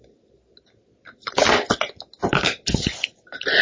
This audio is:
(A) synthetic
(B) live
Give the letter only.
B